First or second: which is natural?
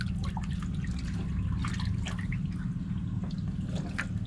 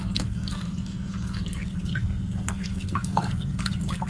first